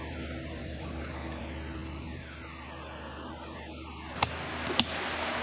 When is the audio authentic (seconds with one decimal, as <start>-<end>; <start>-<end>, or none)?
0.0-0.6; 1.4-5.4